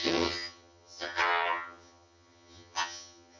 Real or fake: fake